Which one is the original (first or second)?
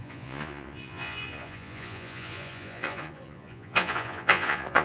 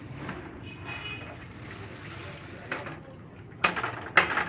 second